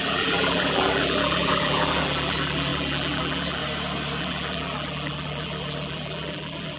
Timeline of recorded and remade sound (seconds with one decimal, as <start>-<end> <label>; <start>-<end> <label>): 0.0-3.6 remade; 3.6-4.2 recorded; 4.2-6.8 remade